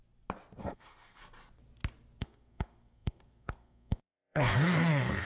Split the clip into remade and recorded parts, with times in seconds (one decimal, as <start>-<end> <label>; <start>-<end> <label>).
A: 0.0-0.6 recorded; 0.6-1.2 remade; 1.2-2.2 recorded; 2.2-5.2 remade